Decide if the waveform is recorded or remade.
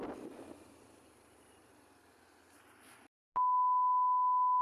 recorded